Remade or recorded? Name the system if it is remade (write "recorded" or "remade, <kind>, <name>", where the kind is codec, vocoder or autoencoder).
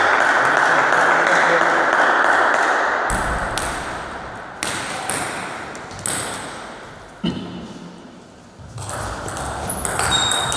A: recorded